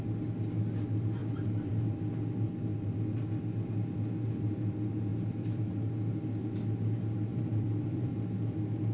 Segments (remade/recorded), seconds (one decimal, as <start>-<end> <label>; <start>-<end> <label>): 0.0-1.2 recorded; 1.2-1.8 remade; 1.8-5.1 recorded; 5.1-5.9 remade; 5.9-7.3 recorded; 7.3-8.1 remade; 8.1-8.9 recorded